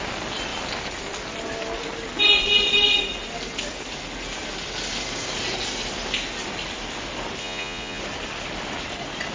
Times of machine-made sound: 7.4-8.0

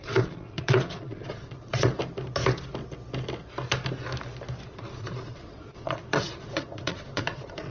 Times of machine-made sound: 0.0-2.0; 4.7-7.7

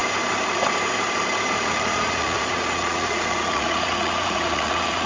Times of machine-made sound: 1.6-5.1

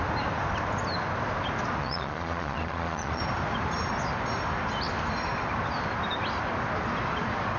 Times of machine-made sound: 1.8-3.2